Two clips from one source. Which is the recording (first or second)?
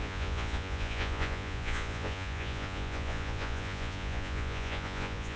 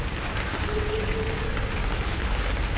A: second